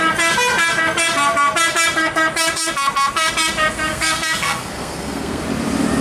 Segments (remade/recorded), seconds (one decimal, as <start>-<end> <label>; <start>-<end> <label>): 0.0-3.9 recorded; 3.9-5.4 remade; 5.4-6.0 recorded